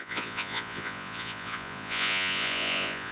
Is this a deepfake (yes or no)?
yes